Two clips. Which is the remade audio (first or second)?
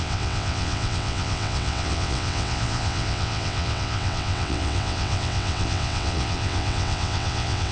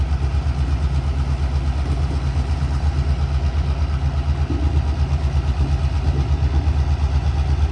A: first